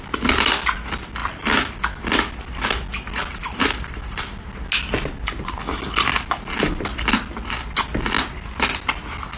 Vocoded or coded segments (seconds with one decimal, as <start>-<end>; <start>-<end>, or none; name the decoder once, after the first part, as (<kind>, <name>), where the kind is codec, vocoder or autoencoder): none